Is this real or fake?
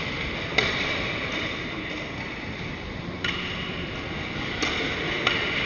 real